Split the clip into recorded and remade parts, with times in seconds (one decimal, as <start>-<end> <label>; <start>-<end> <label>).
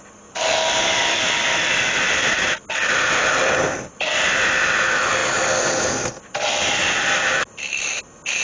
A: 0.0-8.4 recorded